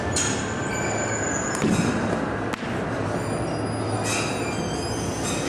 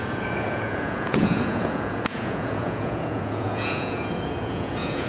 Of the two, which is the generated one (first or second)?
second